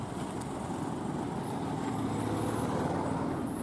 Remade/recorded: recorded